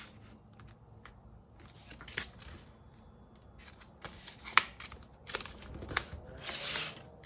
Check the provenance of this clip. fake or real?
real